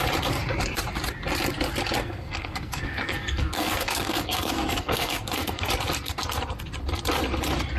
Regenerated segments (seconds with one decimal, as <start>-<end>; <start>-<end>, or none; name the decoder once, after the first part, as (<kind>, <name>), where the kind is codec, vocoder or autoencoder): 2.0-5.7 (codec, SNAC)

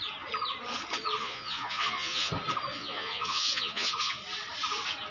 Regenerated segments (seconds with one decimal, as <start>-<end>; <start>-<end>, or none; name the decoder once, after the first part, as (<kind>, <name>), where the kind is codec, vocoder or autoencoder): 1.2-2.3 (vocoder, Vocos); 2.7-4.2